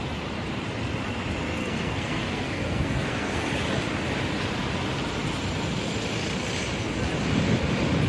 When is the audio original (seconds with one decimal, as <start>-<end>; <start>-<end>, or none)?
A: 0.0-1.6; 3.5-8.1